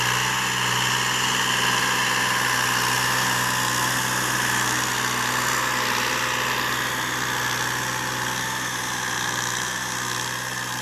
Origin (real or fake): real